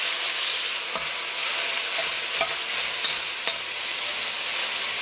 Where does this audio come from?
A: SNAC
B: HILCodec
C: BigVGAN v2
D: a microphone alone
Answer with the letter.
D